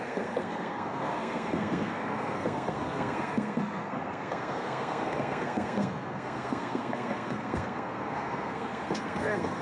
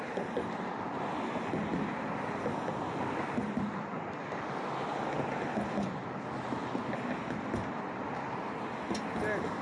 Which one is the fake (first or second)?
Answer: first